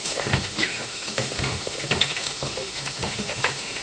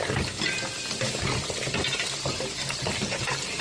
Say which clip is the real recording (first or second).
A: second